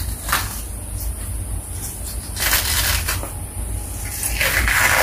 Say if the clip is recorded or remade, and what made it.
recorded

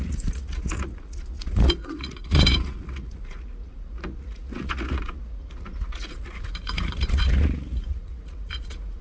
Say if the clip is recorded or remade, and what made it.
remade, vocoder, Vocos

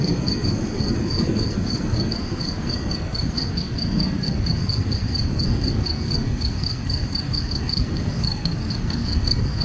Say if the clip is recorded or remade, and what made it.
remade, codec, SNAC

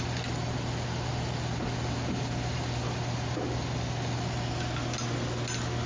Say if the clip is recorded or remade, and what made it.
recorded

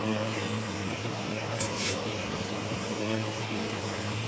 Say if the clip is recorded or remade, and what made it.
remade, codec, SNAC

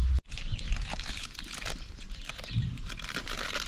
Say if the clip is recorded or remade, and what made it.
remade, vocoder, BigVGAN v2